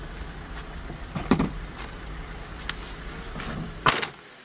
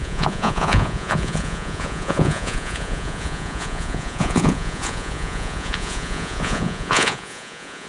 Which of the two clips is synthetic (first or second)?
second